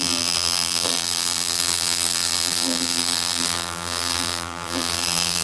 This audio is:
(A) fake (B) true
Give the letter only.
A